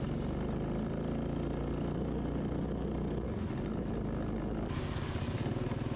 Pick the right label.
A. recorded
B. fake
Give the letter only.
A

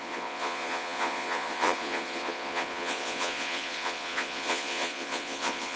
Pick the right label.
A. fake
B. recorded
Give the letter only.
A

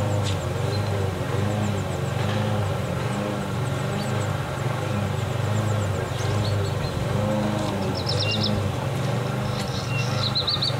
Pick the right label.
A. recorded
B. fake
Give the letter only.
A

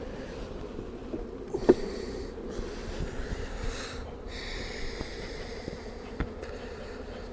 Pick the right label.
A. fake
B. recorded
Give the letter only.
B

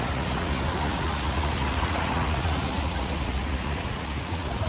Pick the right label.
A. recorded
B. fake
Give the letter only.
B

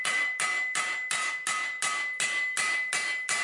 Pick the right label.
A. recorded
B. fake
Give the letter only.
A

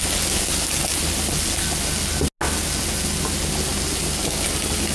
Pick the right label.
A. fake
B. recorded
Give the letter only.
B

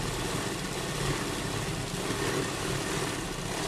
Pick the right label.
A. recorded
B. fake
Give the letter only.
A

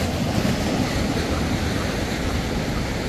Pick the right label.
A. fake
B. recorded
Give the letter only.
B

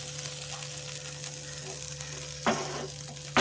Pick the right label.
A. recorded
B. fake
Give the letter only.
A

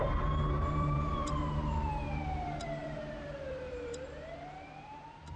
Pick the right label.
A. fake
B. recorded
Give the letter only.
A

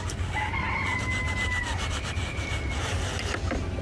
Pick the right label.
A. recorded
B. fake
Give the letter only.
A